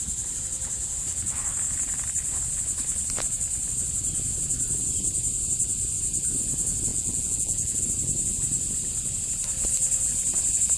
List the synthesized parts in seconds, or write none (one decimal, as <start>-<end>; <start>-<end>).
6.9-7.8

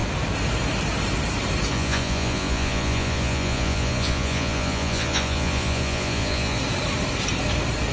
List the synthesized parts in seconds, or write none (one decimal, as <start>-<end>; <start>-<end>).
1.7-6.6

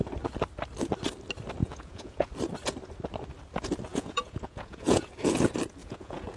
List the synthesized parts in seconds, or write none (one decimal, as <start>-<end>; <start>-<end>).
1.6-2.3; 3.9-5.1; 5.8-6.4

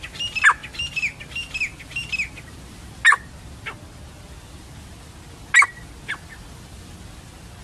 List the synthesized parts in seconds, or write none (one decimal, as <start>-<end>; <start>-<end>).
none